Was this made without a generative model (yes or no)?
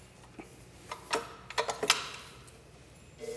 yes